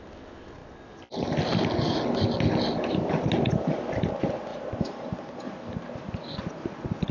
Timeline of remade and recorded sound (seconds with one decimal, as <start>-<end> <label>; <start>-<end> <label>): 0.0-0.6 remade; 0.6-2.9 recorded; 2.9-7.1 remade